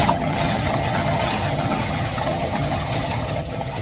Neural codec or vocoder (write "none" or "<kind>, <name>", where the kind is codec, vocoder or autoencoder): vocoder, HiFi-GAN